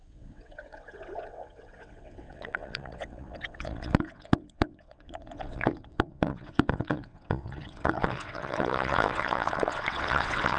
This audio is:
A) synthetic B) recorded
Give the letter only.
A